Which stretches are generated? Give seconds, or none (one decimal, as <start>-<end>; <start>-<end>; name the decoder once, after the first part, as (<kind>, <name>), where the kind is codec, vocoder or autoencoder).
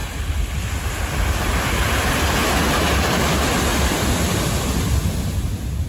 none